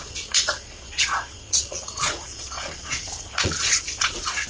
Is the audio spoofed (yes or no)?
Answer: yes